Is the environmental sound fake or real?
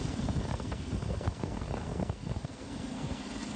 fake